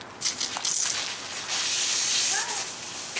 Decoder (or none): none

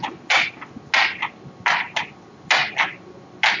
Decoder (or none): none